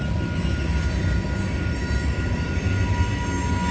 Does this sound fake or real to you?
real